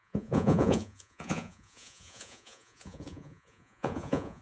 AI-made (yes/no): yes